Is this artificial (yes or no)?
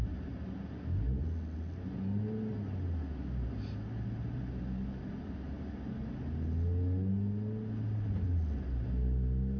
no